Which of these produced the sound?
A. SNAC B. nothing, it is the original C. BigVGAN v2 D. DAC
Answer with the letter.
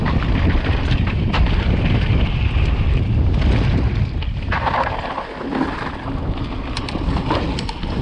B